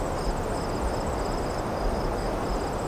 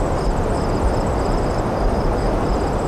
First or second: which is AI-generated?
second